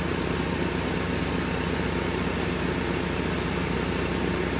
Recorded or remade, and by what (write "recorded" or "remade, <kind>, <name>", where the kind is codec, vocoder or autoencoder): recorded